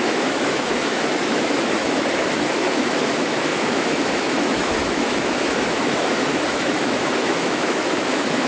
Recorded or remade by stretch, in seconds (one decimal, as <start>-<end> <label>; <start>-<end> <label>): 0.0-8.5 remade